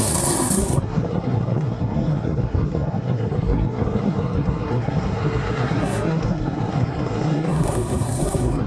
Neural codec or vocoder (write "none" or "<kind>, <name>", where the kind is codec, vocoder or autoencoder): codec, SNAC